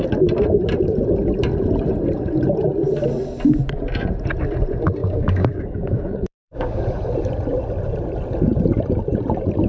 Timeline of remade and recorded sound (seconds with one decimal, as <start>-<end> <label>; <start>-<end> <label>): 0.0-5.0 recorded; 5.0-6.8 remade; 6.8-9.7 recorded